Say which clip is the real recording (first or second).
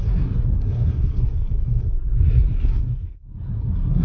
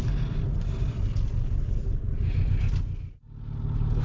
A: second